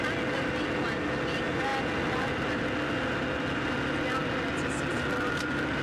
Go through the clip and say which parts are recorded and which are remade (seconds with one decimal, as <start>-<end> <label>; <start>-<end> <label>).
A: 0.0-5.8 recorded